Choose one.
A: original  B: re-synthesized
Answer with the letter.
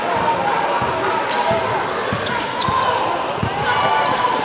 A